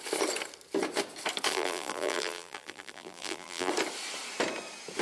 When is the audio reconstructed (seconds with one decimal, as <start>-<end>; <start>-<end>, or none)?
1.5-3.7